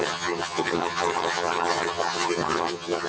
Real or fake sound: fake